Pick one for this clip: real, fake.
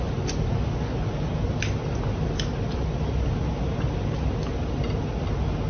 real